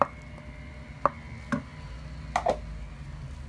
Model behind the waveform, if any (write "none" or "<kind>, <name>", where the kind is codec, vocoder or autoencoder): none